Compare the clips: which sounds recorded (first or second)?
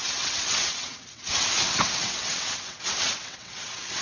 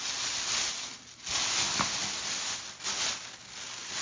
second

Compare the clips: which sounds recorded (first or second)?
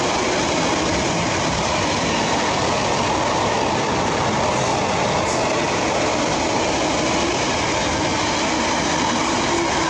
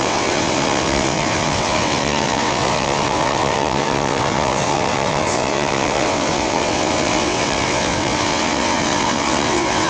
first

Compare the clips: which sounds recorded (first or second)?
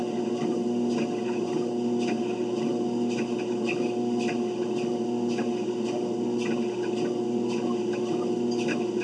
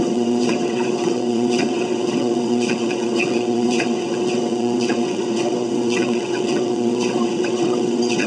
first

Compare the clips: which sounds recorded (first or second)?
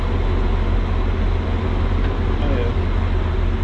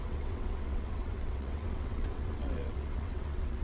first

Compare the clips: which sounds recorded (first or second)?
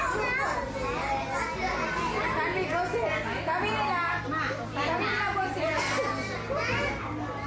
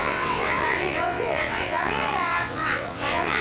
first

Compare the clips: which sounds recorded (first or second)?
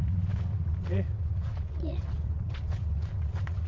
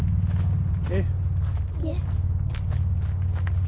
second